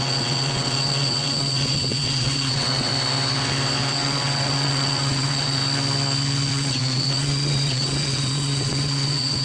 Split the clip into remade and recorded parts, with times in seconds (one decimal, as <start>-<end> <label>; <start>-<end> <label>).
0.0-2.9 remade; 2.9-3.9 recorded; 3.9-5.6 remade; 5.6-6.5 recorded; 6.5-9.4 remade